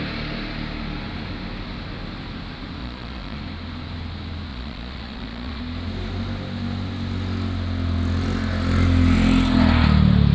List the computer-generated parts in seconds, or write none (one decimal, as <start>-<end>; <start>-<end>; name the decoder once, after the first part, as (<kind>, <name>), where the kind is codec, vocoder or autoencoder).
2.8-3.4 (vocoder, Vocos); 4.5-5.6